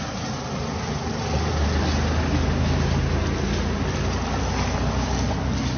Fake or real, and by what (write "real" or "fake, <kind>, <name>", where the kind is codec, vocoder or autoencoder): real